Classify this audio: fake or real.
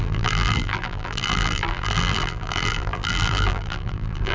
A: fake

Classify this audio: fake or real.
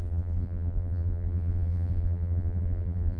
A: fake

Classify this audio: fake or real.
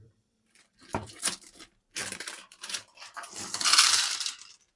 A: fake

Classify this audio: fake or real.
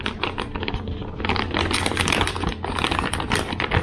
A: real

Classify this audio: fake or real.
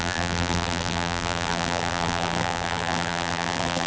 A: fake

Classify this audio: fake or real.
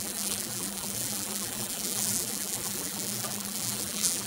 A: fake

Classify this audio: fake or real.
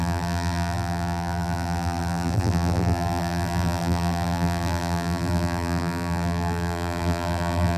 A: fake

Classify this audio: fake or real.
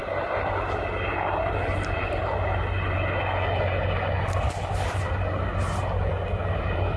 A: real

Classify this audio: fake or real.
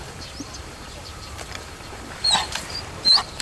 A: fake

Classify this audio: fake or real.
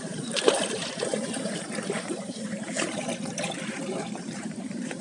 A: fake